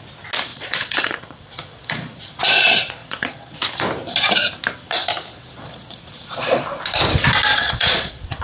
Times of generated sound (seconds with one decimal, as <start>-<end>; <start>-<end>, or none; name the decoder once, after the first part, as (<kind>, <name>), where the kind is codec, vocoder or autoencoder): 0.5-2.2 (vocoder, Vocos); 3.0-3.6; 5.3-6.6; 7.5-8.4